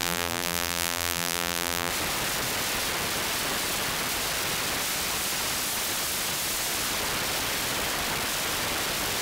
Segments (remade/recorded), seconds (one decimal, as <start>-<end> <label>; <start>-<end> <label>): 0.0-1.9 remade; 1.9-9.2 recorded